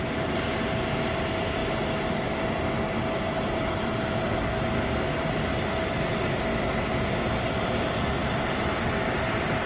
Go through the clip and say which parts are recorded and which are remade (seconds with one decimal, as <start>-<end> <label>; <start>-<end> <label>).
0.0-9.7 recorded